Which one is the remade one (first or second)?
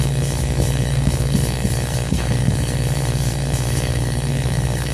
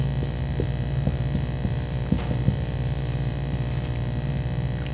first